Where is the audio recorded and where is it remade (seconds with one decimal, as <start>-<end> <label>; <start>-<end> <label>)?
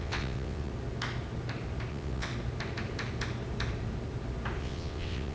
0.0-0.7 remade; 0.7-1.9 recorded; 1.9-2.3 remade; 2.3-4.6 recorded; 4.6-5.3 remade